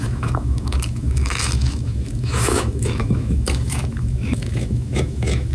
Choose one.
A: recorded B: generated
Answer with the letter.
B